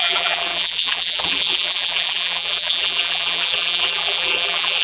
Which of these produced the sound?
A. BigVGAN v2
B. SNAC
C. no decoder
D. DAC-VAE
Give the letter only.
A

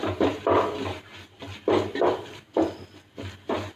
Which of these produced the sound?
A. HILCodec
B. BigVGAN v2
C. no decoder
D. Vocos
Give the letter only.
C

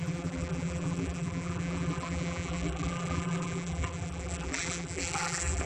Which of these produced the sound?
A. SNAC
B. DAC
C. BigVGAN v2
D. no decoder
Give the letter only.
C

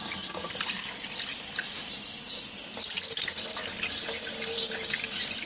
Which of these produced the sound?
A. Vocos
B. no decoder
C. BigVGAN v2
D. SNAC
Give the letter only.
B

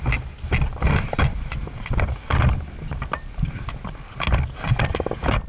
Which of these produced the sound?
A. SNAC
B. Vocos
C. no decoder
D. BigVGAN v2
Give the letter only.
C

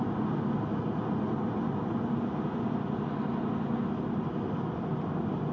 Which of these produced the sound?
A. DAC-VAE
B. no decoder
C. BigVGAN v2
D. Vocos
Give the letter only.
B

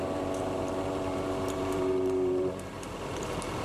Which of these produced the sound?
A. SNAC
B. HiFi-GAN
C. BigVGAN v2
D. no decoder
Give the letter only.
C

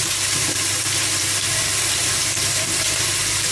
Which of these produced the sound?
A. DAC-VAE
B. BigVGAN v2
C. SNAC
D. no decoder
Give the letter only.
B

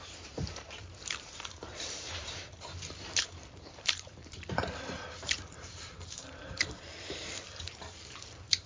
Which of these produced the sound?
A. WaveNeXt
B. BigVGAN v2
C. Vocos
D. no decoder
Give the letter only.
B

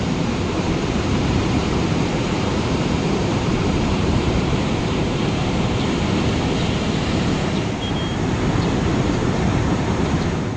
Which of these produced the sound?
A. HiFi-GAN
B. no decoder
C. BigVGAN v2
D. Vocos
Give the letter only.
C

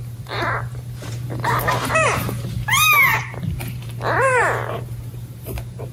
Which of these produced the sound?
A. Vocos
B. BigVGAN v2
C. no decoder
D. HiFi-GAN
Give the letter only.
B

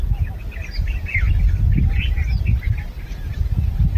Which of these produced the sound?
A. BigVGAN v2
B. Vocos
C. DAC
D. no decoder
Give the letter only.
D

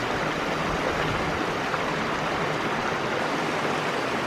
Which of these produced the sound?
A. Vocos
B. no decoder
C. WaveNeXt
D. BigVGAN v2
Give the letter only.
B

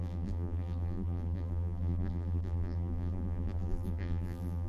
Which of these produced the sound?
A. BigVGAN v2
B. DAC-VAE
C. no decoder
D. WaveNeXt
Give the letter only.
A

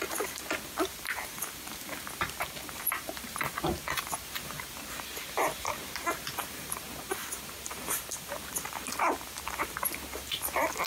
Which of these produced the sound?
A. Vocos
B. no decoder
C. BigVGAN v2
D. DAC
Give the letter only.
C